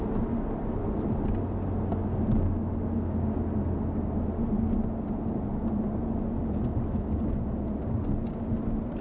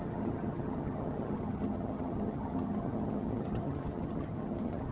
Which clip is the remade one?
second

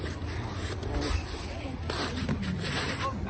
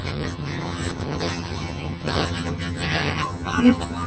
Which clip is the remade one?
second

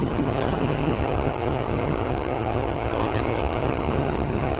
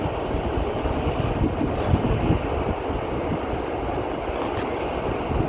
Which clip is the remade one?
first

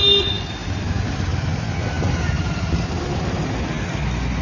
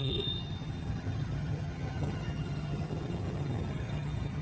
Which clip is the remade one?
second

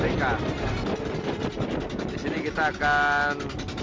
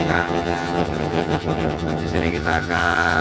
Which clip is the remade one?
second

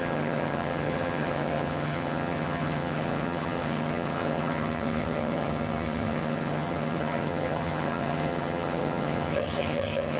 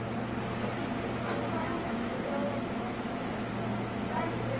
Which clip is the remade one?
first